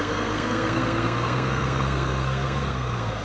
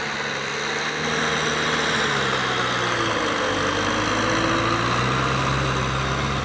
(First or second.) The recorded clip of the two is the second